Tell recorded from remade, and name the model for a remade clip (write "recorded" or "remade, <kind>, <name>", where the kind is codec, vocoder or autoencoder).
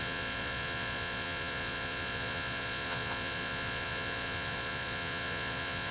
remade, vocoder, Vocos